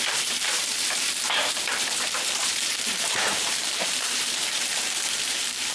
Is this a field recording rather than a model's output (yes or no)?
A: no